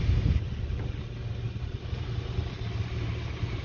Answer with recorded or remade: recorded